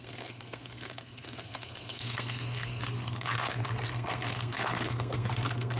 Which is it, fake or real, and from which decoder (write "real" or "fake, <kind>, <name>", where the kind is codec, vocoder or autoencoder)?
fake, codec, SNAC